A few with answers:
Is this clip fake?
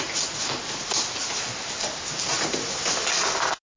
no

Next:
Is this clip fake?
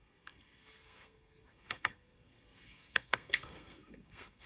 yes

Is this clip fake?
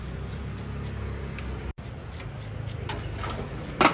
no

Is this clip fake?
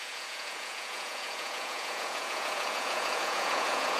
yes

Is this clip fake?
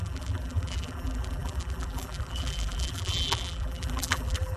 yes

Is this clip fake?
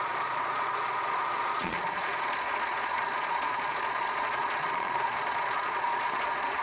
yes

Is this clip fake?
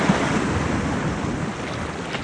no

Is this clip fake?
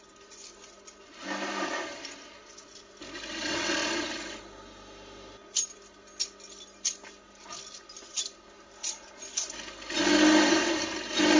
no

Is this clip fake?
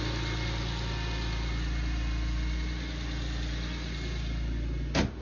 no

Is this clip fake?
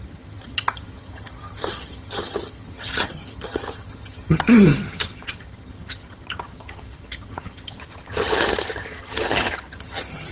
yes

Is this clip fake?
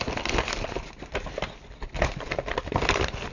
no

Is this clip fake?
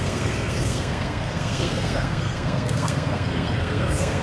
yes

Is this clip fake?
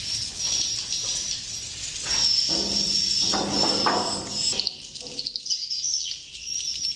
no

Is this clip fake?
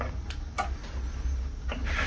no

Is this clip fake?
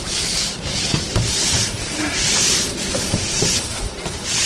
yes